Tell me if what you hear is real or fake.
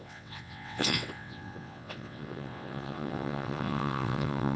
fake